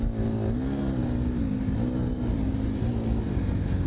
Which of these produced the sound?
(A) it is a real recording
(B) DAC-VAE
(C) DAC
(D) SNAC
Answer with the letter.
A